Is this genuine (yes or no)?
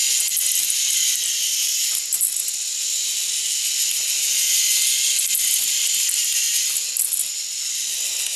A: yes